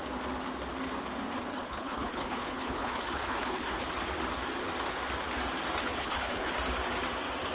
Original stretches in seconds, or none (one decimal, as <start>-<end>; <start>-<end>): 0.0-1.5; 3.9-5.8; 6.5-7.5